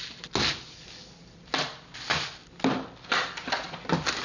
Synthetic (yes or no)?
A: no